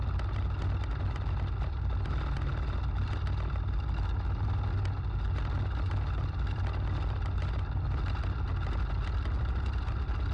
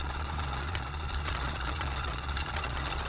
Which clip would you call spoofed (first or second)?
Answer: second